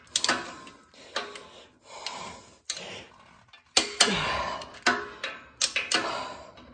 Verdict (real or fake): real